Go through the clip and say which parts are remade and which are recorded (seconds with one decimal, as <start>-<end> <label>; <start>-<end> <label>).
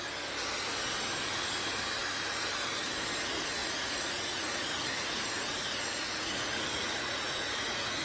0.0-3.6 recorded; 3.6-8.0 remade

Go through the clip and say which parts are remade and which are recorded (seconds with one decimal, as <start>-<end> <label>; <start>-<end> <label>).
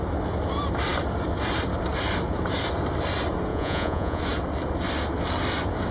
0.0-3.5 recorded; 3.5-4.2 remade; 4.2-5.9 recorded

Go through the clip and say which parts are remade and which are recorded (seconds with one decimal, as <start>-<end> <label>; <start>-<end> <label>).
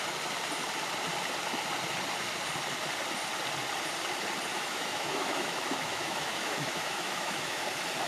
0.0-4.5 recorded; 4.5-7.6 remade; 7.6-8.1 recorded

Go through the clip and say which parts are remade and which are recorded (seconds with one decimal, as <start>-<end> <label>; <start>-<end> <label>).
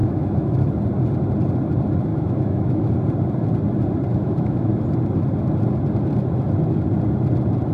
0.0-0.8 remade; 0.8-2.1 recorded; 2.1-2.9 remade; 2.9-4.1 recorded; 4.1-4.7 remade; 4.7-7.7 recorded